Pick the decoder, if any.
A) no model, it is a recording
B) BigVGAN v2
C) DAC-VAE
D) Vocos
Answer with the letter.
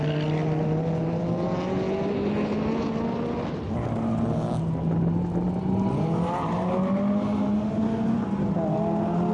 A